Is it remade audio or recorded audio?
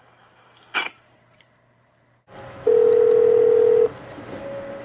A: recorded